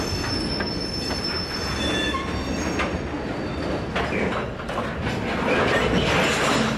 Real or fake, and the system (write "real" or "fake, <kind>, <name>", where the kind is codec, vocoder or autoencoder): real